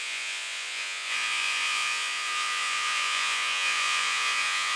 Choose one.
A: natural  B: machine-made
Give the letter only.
B